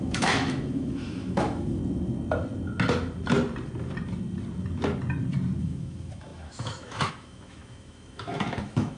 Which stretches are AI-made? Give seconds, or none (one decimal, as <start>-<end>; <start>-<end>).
0.0-1.8; 5.6-9.0